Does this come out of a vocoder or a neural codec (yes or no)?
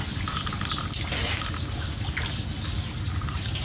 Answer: no